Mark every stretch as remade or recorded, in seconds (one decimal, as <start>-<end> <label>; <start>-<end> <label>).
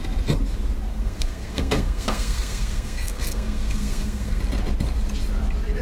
0.0-0.9 recorded; 0.9-4.4 remade; 4.4-5.8 recorded